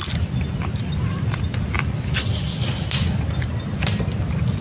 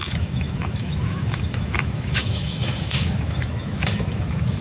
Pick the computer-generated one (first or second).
second